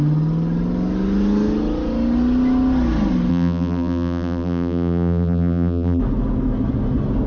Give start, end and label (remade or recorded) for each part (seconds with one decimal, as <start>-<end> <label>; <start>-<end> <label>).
0.0-3.3 recorded; 3.3-6.0 remade; 6.0-7.3 recorded